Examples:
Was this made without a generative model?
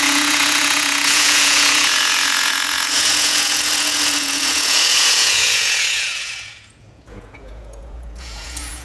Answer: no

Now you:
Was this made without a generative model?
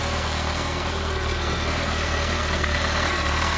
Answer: no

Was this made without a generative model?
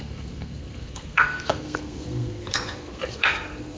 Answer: no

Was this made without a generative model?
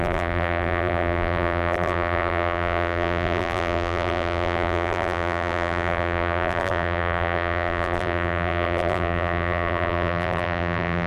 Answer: no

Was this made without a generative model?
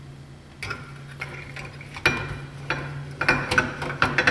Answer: yes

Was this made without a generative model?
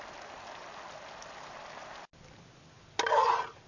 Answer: yes